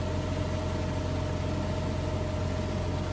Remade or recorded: recorded